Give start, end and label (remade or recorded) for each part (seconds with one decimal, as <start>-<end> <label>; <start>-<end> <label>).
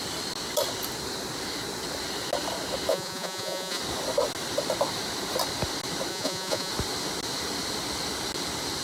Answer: 0.0-2.9 recorded; 2.9-3.8 remade; 3.8-6.1 recorded; 6.1-6.7 remade; 6.7-8.8 recorded